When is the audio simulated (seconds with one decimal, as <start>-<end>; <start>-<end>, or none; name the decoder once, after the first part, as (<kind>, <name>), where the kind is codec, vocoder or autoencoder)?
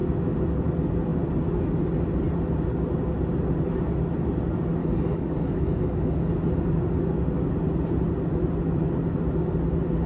4.8-6.3 (codec, DAC)